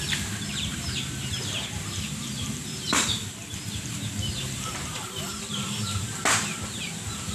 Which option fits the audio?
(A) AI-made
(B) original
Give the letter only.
A